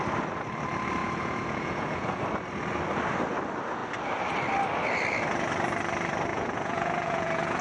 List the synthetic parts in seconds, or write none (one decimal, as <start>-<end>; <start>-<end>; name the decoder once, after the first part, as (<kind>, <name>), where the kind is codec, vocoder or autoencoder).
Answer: 1.0-2.2 (vocoder, Vocos); 6.3-7.6